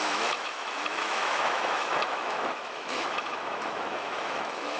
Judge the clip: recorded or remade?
remade